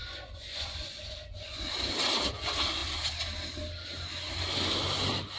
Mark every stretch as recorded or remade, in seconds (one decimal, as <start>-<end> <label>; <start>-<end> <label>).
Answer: 0.0-1.7 remade; 1.7-5.4 recorded